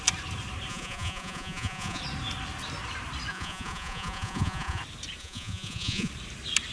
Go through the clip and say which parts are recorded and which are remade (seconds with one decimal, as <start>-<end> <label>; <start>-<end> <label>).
0.0-0.7 recorded; 0.7-2.0 remade; 2.0-3.3 recorded; 3.3-4.8 remade; 4.8-5.2 recorded; 5.2-6.1 remade; 6.1-6.7 recorded